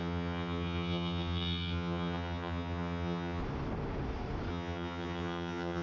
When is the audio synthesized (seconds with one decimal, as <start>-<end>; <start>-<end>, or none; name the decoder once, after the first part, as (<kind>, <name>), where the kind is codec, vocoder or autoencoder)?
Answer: 0.0-3.4 (vocoder, HiFi-GAN); 4.5-5.8